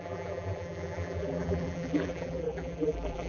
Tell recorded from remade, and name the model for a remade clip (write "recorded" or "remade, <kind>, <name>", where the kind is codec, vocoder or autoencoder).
remade, vocoder, BigVGAN v2